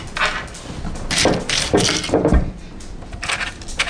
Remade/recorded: recorded